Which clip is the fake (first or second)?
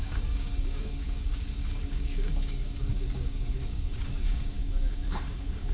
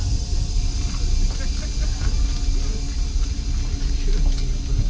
first